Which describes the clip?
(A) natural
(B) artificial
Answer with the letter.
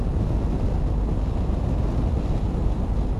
A